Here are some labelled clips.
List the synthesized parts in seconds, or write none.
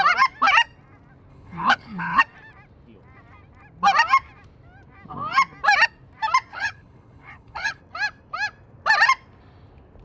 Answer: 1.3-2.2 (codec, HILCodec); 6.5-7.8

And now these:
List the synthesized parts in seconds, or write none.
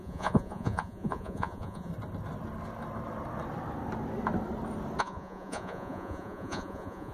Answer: 0.0-1.9 (vocoder, Vocos); 5.0-7.1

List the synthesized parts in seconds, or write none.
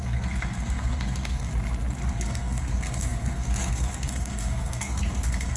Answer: 0.0-1.5 (codec, SNAC); 2.1-5.6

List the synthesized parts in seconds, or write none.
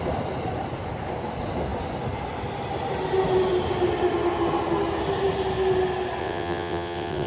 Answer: 6.2-7.3 (vocoder, WaveNeXt)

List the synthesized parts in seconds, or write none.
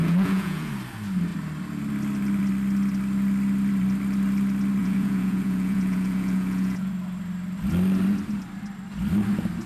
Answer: 0.0-0.7 (vocoder, Vocos); 4.8-6.9